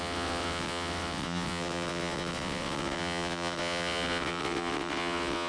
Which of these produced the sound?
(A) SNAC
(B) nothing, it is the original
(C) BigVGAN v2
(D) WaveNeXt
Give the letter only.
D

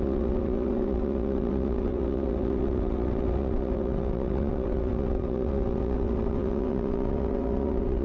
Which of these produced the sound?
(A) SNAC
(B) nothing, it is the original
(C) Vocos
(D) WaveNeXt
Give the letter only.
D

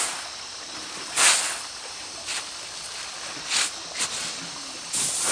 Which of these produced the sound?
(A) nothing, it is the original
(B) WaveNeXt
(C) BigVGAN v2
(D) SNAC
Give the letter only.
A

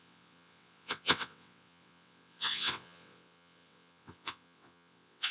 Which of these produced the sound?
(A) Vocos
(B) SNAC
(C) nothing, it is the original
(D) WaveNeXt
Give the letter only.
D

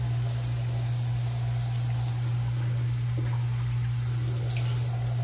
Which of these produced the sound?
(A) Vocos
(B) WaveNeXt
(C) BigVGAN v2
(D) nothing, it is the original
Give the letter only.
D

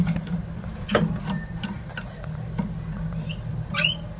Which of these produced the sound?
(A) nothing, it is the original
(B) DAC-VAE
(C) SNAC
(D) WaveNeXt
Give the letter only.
A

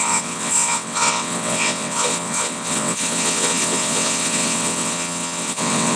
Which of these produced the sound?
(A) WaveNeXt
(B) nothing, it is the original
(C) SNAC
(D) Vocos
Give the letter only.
A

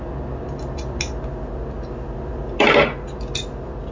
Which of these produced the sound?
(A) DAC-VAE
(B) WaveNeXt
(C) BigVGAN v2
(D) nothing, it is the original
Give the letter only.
D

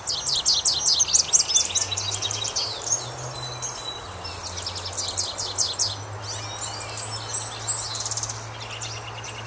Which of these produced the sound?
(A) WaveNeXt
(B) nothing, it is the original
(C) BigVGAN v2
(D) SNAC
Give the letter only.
B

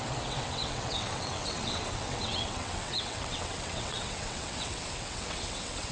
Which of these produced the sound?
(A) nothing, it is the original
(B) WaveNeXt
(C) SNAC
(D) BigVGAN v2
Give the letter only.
B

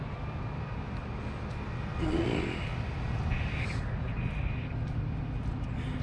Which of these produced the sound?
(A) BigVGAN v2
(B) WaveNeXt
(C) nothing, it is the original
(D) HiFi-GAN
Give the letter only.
C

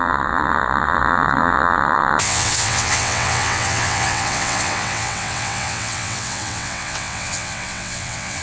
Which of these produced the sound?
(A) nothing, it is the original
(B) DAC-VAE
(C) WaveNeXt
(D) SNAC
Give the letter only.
C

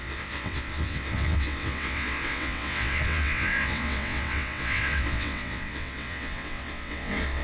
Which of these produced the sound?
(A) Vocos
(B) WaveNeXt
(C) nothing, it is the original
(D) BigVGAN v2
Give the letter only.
B